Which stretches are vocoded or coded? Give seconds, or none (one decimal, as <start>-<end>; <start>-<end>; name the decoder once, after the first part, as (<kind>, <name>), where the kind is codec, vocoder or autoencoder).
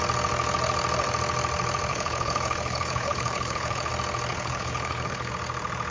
1.9-3.9 (codec, HILCodec); 4.3-5.3